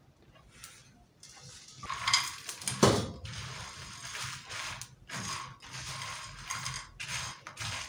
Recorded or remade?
recorded